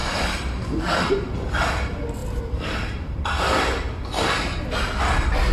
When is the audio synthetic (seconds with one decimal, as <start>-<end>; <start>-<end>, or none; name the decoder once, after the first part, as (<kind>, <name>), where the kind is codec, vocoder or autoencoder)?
none